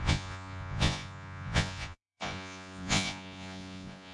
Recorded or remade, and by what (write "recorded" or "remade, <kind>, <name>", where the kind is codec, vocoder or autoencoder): remade, vocoder, Vocos